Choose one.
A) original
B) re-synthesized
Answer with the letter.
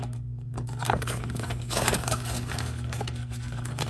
B